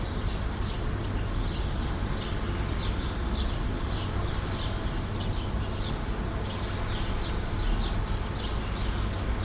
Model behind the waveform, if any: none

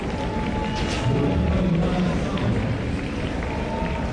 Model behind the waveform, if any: none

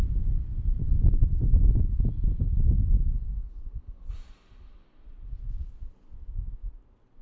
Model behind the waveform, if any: none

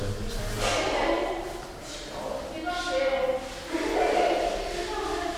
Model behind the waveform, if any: none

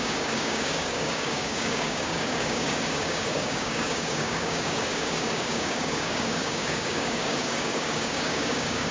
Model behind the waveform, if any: codec, DAC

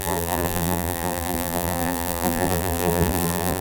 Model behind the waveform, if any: vocoder, BigVGAN v2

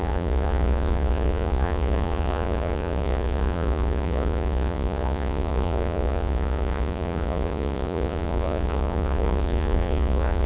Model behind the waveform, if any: vocoder, Vocos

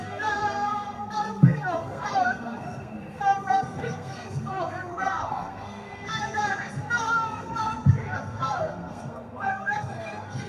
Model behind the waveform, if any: codec, SNAC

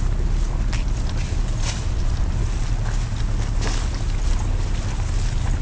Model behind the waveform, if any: none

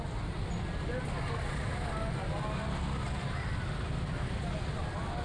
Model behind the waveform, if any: none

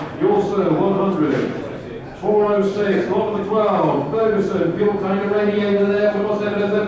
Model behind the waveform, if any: none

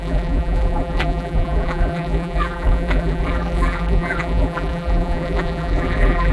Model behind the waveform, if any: vocoder, BigVGAN v2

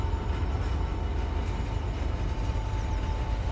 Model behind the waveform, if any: none